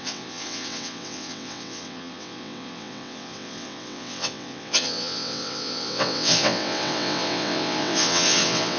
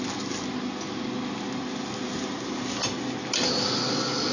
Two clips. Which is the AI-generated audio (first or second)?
first